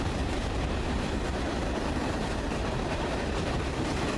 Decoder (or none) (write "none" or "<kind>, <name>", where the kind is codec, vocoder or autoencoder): vocoder, BigVGAN v2